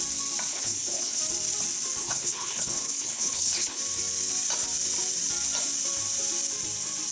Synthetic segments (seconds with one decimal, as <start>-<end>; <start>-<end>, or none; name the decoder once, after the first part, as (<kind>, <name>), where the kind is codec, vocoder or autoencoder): 0.5-1.2 (codec, HILCodec); 2.0-3.8